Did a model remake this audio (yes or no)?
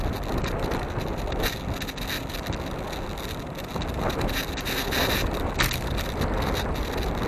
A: no